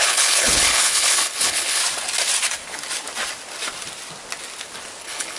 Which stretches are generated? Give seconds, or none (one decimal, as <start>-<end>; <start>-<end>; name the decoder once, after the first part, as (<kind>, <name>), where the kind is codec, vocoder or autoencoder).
0.0-1.8 (codec, HILCodec); 5.0-5.4